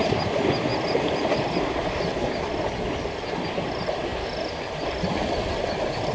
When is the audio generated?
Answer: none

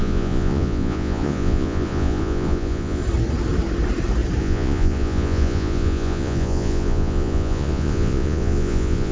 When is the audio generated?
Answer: 0.0-3.0; 4.4-9.1

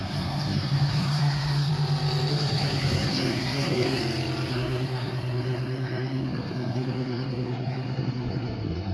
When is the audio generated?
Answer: 0.0-1.7; 2.3-4.0; 4.5-8.9

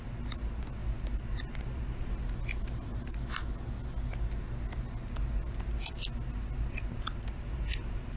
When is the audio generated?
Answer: none

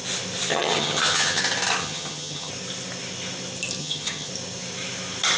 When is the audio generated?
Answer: 0.5-1.4; 1.8-2.5; 3.8-4.3

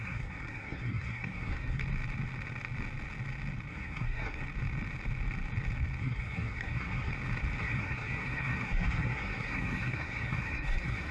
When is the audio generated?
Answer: 0.0-1.8; 3.7-4.4; 6.0-7.1; 7.6-11.1

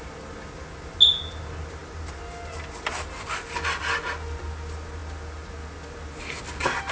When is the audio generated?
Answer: none